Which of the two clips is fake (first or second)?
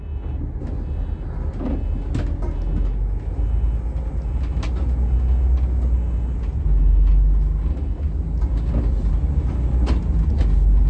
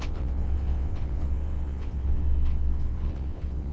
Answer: second